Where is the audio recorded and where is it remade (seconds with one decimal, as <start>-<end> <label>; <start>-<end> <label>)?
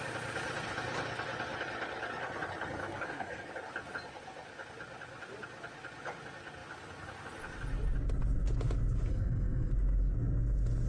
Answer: 0.0-2.8 recorded; 2.8-3.5 remade; 3.5-9.1 recorded; 9.1-9.7 remade; 9.7-10.9 recorded